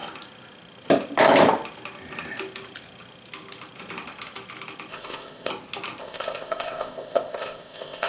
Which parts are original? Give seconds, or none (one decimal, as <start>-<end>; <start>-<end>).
0.0-4.9; 5.5-6.0